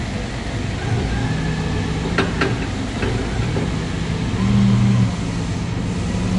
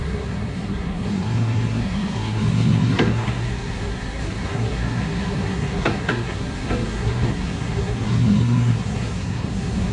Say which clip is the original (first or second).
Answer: first